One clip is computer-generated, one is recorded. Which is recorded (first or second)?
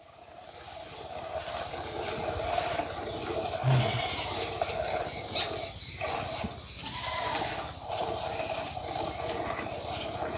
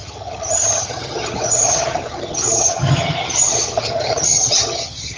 first